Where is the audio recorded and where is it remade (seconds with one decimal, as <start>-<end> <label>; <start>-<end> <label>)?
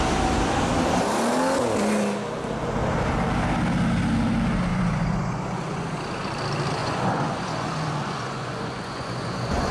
0.0-4.7 recorded; 4.7-6.0 remade; 6.0-6.8 recorded; 6.8-9.7 remade